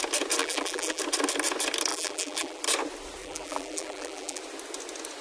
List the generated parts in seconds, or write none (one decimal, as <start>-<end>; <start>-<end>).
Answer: 0.4-1.0; 1.9-2.6; 3.2-4.4